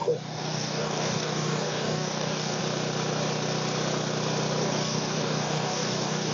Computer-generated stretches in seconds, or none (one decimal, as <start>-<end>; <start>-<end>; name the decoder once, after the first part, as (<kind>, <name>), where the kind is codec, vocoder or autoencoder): 0.0-2.6 (codec, DAC); 4.6-6.3